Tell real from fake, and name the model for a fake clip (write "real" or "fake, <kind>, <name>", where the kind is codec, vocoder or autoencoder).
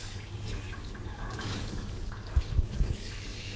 fake, codec, DAC